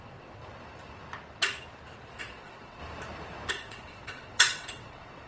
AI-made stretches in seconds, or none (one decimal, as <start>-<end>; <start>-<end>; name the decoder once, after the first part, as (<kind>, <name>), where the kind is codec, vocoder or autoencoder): 0.0-0.4 (vocoder, WaveNeXt); 2.2-2.8; 3.5-5.3